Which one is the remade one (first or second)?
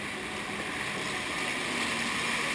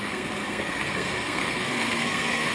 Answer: second